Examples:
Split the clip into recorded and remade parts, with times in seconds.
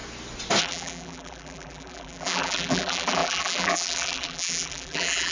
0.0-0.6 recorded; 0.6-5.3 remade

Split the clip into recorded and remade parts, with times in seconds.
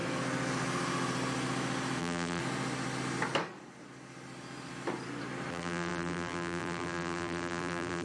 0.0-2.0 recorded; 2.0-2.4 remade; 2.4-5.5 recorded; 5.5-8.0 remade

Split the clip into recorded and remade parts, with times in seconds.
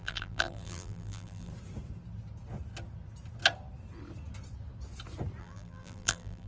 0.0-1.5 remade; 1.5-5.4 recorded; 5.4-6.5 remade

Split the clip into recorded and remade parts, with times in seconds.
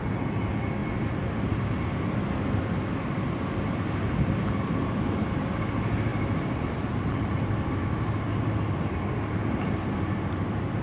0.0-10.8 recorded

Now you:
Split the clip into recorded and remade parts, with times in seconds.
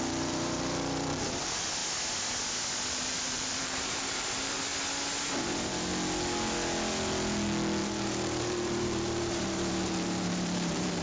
0.0-1.8 remade; 1.8-2.9 recorded; 2.9-4.7 remade; 4.7-5.4 recorded; 5.4-5.9 remade; 5.9-7.8 recorded; 7.8-11.0 remade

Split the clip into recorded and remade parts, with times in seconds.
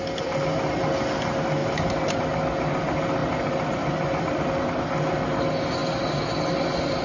0.0-1.6 recorded; 1.6-2.2 remade; 2.2-3.2 recorded; 3.2-4.7 remade; 4.7-7.0 recorded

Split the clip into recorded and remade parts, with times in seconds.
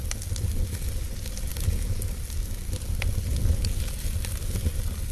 0.0-5.1 recorded